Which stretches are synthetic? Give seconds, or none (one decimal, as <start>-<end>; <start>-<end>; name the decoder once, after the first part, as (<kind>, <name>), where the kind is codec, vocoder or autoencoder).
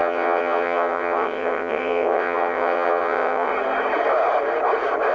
0.0-3.5 (vocoder, WaveNeXt)